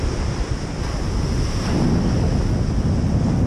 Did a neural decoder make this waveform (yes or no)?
no